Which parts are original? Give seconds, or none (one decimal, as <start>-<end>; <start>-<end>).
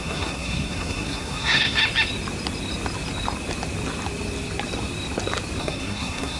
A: 1.8-5.6